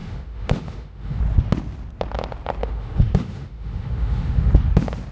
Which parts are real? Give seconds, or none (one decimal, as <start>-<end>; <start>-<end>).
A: 1.2-2.6; 4.5-5.1